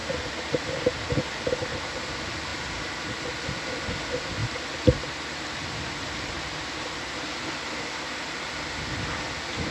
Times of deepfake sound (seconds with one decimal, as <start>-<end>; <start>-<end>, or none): 4.4-7.3